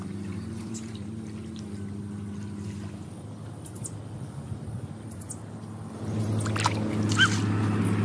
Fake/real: real